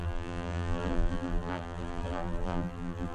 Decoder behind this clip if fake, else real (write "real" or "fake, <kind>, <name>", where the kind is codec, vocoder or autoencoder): fake, vocoder, BigVGAN v2